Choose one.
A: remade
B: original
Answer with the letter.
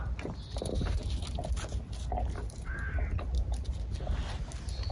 B